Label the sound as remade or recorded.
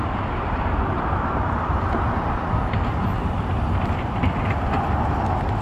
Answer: remade